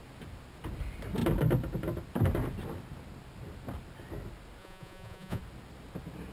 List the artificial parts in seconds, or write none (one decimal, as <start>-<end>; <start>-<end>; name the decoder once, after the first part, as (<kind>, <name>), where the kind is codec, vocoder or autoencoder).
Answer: 4.6-5.4 (vocoder, Vocos)